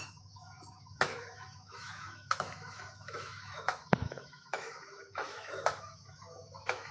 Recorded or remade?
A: remade